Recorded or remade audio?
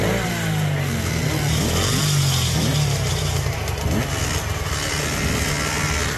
recorded